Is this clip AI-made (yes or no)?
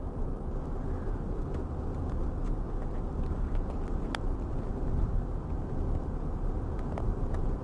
no